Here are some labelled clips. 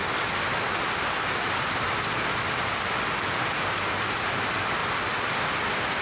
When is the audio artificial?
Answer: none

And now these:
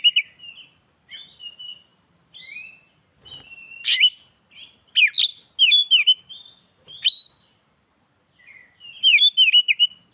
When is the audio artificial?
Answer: none

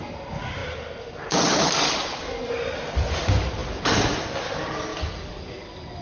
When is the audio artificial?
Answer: none

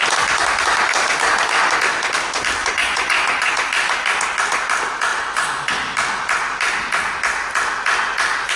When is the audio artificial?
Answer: 2.6-3.5 (vocoder, Vocos); 5.1-5.7

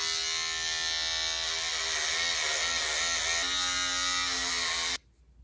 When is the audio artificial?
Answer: none

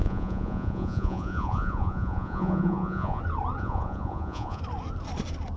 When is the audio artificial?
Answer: 0.0-3.2 (vocoder, Vocos); 3.6-4.6

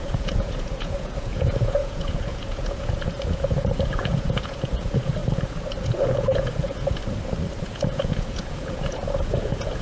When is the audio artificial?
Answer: 0.0-5.2 (vocoder, Vocos); 5.8-7.0; 7.6-9.8

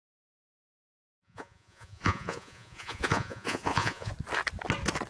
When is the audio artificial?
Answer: 1.0-4.1 (vocoder, Vocos)